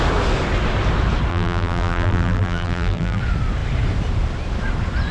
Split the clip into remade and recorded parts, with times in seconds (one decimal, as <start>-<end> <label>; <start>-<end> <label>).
0.0-1.3 recorded; 1.3-3.2 remade; 3.2-5.1 recorded